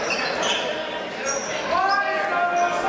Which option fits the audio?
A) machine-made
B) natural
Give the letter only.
B